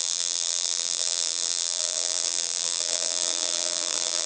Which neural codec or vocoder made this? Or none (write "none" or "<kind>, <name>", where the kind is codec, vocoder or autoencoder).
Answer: vocoder, BigVGAN v2